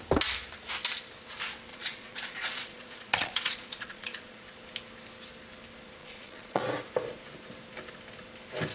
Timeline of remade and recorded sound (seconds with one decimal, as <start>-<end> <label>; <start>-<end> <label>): 0.0-1.7 recorded; 1.7-4.4 remade; 4.4-6.0 recorded; 6.0-6.6 remade; 6.6-8.7 recorded